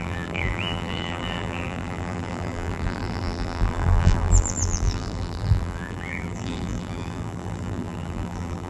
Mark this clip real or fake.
fake